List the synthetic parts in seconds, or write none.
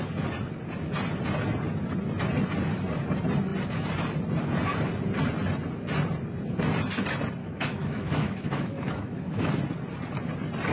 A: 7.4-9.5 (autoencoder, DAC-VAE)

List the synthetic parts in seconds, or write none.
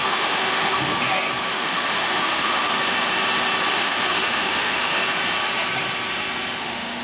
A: 0.0-0.9 (autoencoder, DAC-VAE); 1.5-2.7; 3.7-5.0; 6.6-7.0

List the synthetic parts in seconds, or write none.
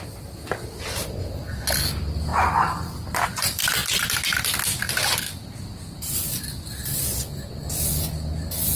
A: none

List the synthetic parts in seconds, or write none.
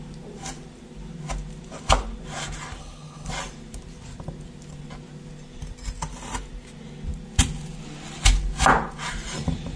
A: 2.8-3.3 (codec, HILCodec)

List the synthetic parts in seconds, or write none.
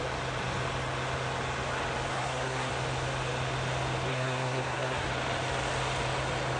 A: 2.1-2.7 (codec, SNAC); 4.1-5.1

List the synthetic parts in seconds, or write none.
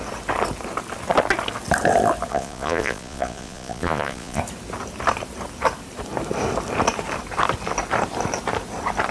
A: 2.3-4.4 (vocoder, Vocos)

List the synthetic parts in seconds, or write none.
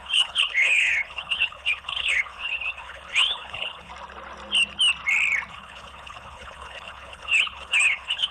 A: 0.0-3.9 (codec, HILCodec); 5.5-8.3